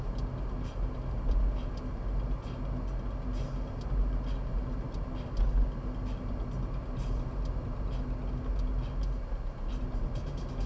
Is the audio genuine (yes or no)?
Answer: yes